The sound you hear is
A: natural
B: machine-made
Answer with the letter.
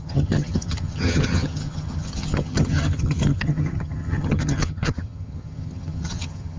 B